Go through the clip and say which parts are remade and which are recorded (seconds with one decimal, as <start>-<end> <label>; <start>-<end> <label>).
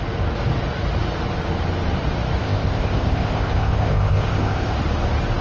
0.0-2.4 recorded; 2.4-4.7 remade; 4.7-5.4 recorded